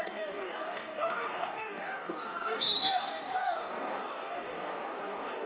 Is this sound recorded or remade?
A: remade